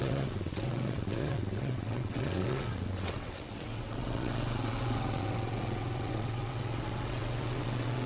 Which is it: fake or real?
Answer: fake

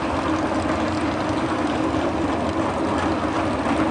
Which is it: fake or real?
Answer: real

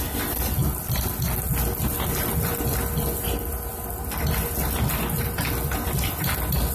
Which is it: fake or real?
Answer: real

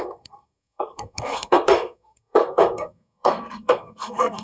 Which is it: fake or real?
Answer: fake